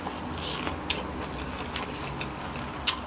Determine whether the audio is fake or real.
real